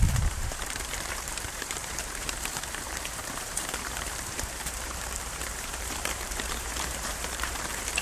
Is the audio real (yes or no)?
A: no